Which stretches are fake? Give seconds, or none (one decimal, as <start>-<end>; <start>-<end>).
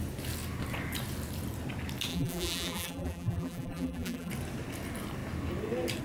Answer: 2.1-4.3